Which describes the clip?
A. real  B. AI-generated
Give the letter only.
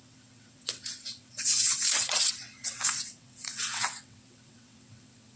B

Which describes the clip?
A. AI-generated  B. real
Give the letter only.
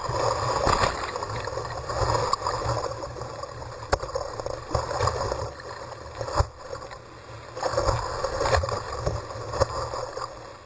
B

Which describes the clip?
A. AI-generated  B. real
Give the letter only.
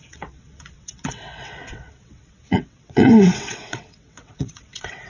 A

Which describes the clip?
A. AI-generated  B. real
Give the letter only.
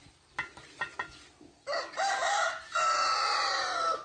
B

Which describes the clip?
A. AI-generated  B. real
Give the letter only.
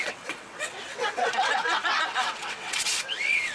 A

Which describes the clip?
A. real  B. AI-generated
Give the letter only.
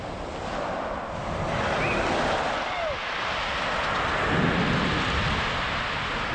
A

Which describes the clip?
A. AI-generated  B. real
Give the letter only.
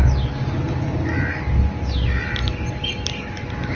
B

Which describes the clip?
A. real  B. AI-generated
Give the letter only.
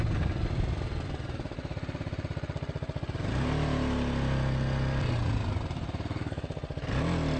A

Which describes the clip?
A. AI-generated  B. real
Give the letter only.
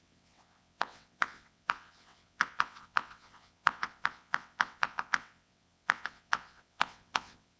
A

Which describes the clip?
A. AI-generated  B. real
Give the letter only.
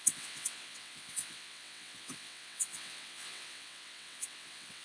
A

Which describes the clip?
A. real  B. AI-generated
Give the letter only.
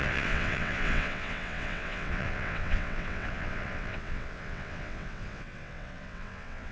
B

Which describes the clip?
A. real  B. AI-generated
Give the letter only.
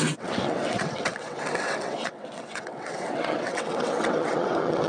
B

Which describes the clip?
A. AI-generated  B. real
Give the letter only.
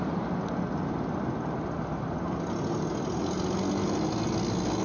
B